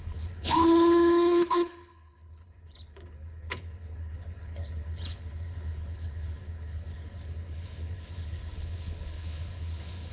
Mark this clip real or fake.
fake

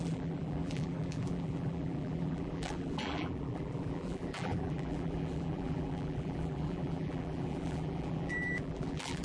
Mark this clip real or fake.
fake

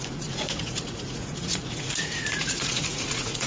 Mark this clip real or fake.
fake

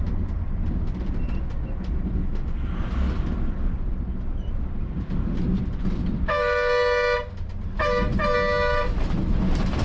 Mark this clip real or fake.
real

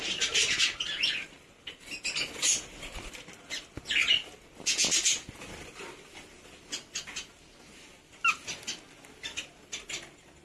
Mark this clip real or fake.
real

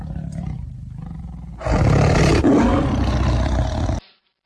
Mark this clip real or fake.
real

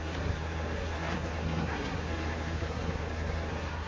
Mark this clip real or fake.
fake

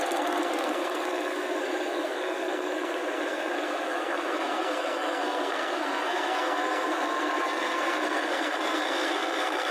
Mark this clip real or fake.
fake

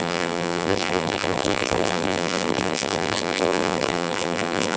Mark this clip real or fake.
fake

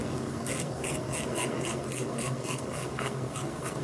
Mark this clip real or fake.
fake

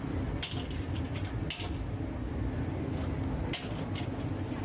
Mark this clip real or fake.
real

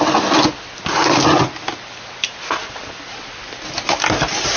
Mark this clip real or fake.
real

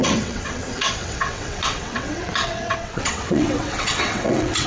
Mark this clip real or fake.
fake